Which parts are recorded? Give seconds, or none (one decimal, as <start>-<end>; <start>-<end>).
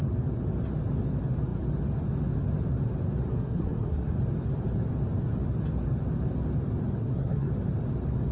0.0-3.3; 4.1-7.0; 7.5-8.3